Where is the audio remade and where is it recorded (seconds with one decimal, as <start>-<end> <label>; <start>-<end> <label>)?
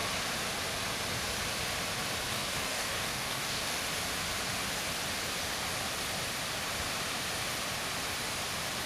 0.0-2.3 recorded; 2.3-3.8 remade; 3.8-8.9 recorded